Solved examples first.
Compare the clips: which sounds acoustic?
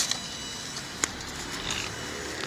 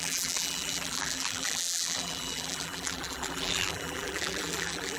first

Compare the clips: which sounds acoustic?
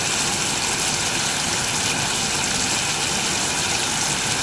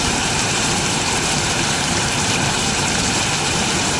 first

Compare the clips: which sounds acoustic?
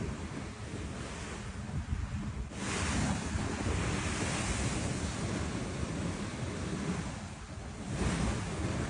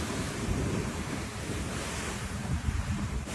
first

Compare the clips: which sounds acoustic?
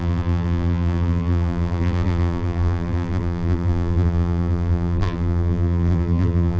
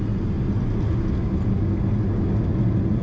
second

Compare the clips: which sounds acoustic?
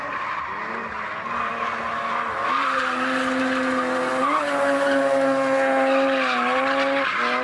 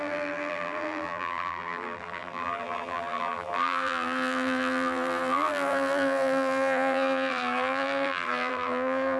first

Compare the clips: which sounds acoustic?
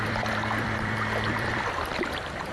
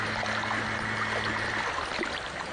second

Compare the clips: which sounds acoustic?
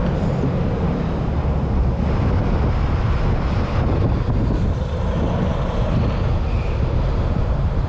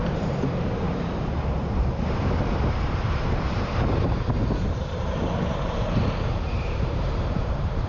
first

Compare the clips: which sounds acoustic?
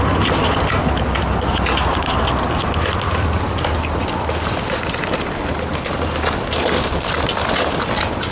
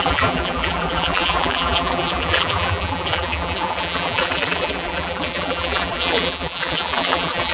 first